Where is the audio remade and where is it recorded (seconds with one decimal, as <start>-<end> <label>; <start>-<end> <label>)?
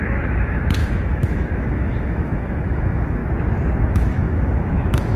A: 0.0-3.2 remade; 3.2-3.9 recorded; 3.9-5.2 remade